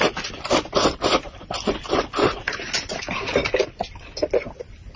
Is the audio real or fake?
real